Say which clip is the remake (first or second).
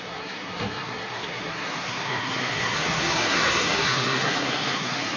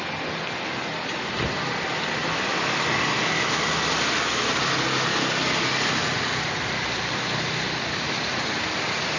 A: first